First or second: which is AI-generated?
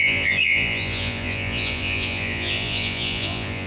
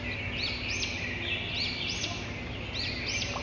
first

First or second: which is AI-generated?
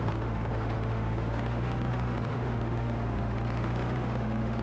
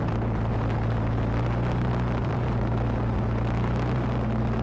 first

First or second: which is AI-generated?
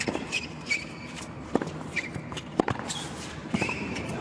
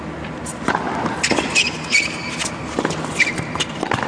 first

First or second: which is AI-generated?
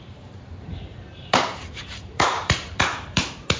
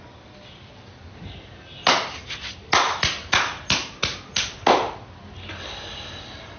first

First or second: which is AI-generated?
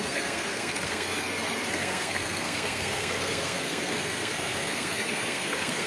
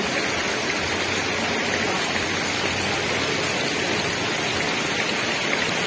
first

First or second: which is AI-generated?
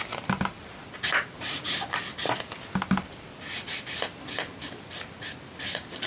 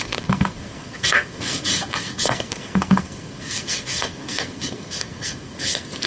second